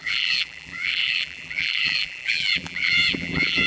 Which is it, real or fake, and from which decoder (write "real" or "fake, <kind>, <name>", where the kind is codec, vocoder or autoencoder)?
fake, vocoder, BigVGAN v2